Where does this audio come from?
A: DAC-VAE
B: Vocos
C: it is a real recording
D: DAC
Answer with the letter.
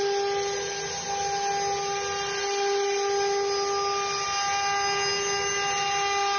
C